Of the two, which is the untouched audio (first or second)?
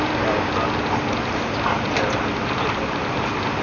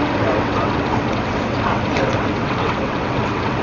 first